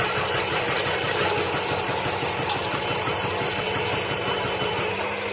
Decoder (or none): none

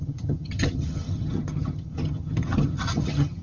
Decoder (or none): vocoder, HiFi-GAN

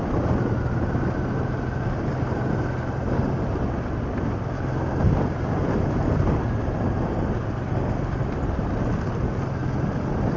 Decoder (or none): none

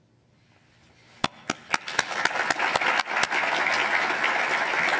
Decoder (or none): none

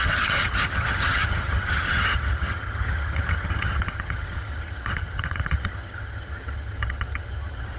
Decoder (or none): vocoder, HiFi-GAN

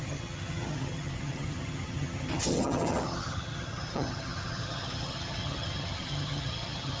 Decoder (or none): vocoder, HiFi-GAN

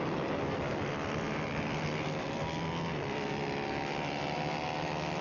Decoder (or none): none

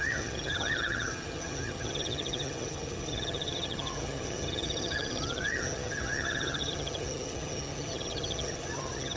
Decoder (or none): vocoder, HiFi-GAN